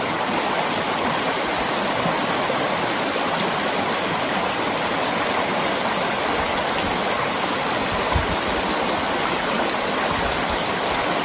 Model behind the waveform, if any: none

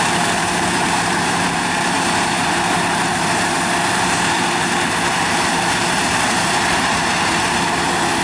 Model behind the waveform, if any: vocoder, BigVGAN v2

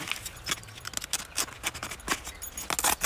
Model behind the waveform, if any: none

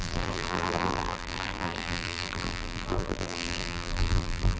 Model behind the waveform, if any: vocoder, BigVGAN v2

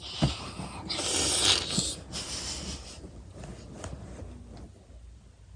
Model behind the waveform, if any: none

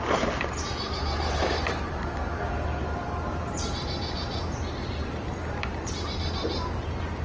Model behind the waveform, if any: vocoder, BigVGAN v2